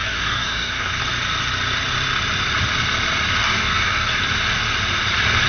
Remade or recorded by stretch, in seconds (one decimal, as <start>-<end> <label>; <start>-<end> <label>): 0.0-1.0 remade; 1.0-3.4 recorded; 3.4-4.2 remade; 4.2-5.5 recorded